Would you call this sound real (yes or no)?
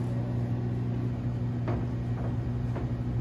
yes